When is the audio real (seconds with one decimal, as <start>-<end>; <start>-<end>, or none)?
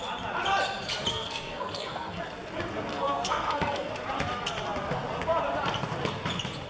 0.0-1.1; 2.2-2.9; 3.9-6.7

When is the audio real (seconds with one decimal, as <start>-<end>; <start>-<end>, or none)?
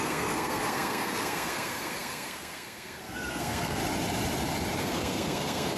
3.8-4.8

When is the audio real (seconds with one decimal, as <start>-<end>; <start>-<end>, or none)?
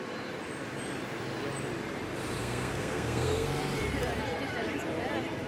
0.0-2.4; 3.6-5.5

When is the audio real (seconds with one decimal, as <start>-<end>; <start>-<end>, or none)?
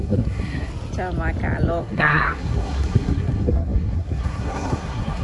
0.7-1.8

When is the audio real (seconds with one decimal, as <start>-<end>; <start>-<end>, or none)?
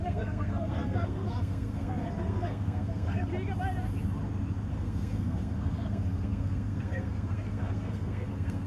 3.3-4.7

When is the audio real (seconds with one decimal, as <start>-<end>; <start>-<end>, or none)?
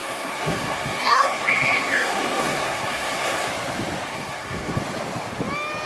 3.5-4.1; 4.8-5.9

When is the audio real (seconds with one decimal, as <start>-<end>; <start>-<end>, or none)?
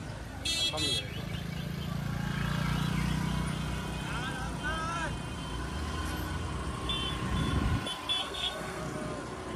0.0-8.2; 8.8-9.6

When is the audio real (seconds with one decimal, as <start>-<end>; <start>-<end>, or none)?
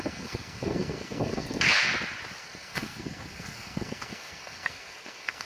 1.9-2.4